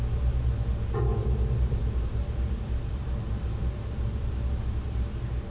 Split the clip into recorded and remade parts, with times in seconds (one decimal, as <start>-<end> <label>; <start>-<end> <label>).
0.0-1.1 recorded; 1.1-4.4 remade; 4.4-5.5 recorded